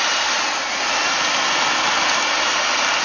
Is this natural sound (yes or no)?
yes